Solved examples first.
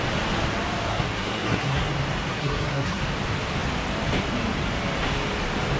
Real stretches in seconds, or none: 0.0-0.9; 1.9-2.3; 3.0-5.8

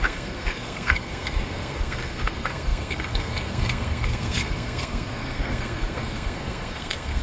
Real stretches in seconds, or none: none